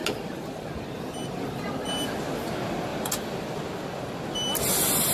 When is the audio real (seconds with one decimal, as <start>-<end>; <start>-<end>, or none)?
0.0-5.1

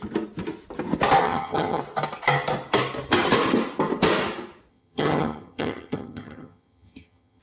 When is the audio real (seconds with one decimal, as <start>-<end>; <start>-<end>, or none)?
0.0-1.2; 1.8-4.7

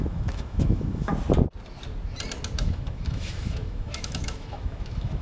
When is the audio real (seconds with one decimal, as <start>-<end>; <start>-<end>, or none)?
1.1-2.6

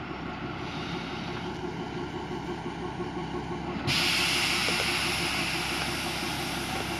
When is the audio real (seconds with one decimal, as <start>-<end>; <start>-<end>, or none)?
0.0-7.0

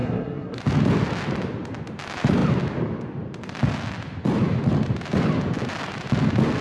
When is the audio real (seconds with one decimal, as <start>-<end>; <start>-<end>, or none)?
0.6-6.6

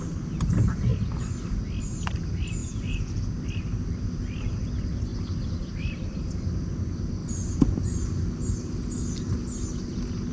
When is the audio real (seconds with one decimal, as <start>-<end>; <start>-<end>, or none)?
0.0-2.6; 3.2-10.3

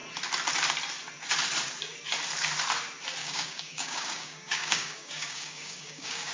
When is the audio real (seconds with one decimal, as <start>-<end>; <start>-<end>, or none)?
0.0-3.2